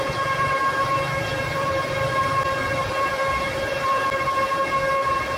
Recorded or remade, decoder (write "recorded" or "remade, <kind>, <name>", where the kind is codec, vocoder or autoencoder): remade, vocoder, BigVGAN v2